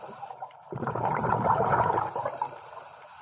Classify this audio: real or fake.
fake